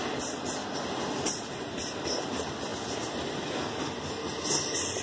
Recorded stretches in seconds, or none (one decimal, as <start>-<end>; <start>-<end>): 0.0-5.0